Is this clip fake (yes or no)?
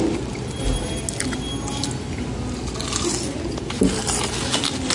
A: no